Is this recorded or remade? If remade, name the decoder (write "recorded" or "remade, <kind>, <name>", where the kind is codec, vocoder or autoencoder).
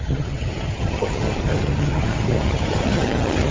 remade, vocoder, HiFi-GAN